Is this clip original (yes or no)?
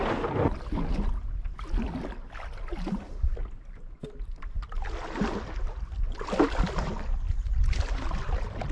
yes